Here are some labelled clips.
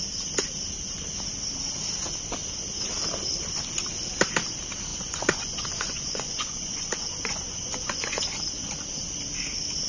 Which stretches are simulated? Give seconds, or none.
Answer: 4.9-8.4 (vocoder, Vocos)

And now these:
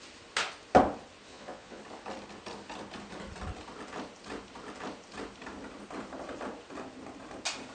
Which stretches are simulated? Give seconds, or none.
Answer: 1.3-1.8 (vocoder, Vocos)

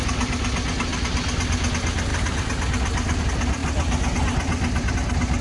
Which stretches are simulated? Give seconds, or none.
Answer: none

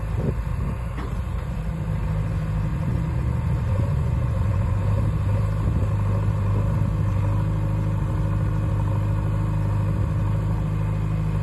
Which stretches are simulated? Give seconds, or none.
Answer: 0.5-1.6 (vocoder, Vocos); 2.7-4.8

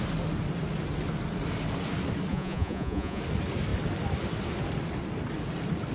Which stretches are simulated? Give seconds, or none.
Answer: 2.3-3.2 (vocoder, Vocos)

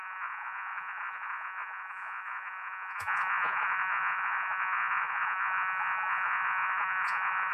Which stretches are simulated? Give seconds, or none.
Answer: 0.0-7.5 (vocoder, Vocos)

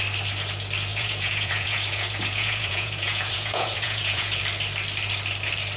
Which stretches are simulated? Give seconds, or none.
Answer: 0.9-4.4 (vocoder, Vocos)